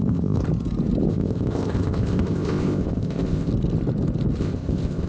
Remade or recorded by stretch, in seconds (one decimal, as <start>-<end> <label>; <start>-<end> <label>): 0.0-0.4 remade; 0.4-1.1 recorded; 1.1-3.5 remade; 3.5-4.4 recorded; 4.4-5.1 remade

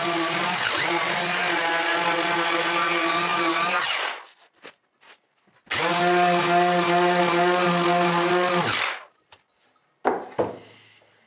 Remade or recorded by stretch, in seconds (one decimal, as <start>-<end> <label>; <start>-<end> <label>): 0.0-11.3 recorded

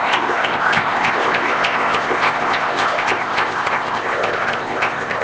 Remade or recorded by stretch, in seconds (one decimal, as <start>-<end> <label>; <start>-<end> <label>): 0.0-5.2 remade

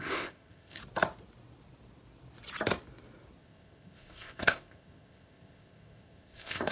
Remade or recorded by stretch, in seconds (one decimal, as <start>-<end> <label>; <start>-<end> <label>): 0.0-0.8 remade; 0.8-3.4 recorded; 3.4-6.7 remade

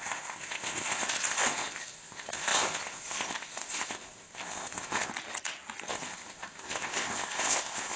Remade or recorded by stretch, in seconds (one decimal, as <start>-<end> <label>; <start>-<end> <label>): 0.0-5.1 remade; 5.1-5.9 recorded; 5.9-8.0 remade